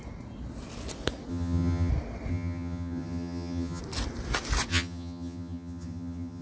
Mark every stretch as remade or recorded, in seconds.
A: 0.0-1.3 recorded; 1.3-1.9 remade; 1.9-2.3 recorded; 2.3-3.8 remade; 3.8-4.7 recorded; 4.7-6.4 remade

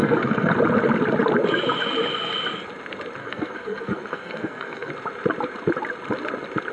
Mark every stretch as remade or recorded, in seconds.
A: 0.0-0.5 remade; 0.5-3.2 recorded; 3.2-4.9 remade; 4.9-6.7 recorded

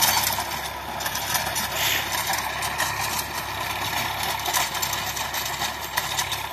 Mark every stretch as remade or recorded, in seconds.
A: 0.0-6.5 recorded

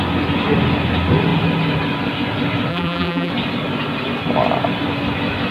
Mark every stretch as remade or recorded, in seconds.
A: 0.0-2.7 recorded; 2.7-3.3 remade; 3.3-5.5 recorded

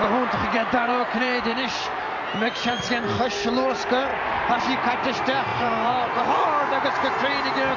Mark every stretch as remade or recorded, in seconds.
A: 0.0-2.9 remade; 2.9-4.1 recorded; 4.1-4.6 remade; 4.6-5.5 recorded; 5.5-6.2 remade; 6.2-7.8 recorded

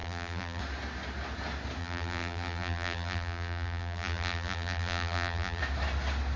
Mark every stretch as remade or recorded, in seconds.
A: 0.0-0.6 remade; 0.6-1.8 recorded; 1.8-5.6 remade; 5.6-6.4 recorded

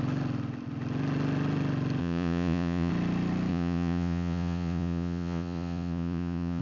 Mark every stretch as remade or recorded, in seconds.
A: 0.0-2.0 recorded; 2.0-2.9 remade; 2.9-3.5 recorded; 3.5-6.6 remade